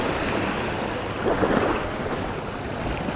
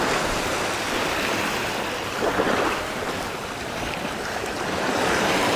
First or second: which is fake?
second